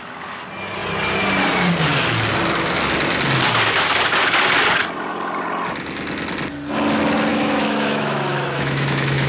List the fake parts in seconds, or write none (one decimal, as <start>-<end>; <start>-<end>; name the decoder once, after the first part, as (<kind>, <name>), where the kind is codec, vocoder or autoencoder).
7.3-9.3 (autoencoder, DAC-VAE)